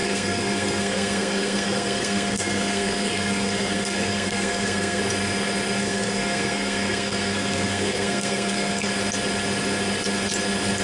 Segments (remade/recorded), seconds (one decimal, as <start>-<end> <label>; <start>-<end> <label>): 0.0-5.0 remade; 5.0-5.8 recorded; 5.8-8.9 remade; 8.9-10.8 recorded